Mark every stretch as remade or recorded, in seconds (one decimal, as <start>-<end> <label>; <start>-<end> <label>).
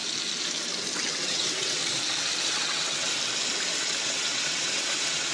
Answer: 0.0-1.1 recorded; 1.1-1.8 remade; 1.8-2.5 recorded; 2.5-3.1 remade; 3.1-4.0 recorded; 4.0-5.3 remade